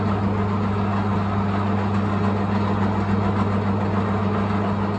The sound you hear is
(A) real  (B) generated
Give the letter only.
A